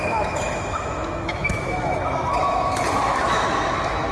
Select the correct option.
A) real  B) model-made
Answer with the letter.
B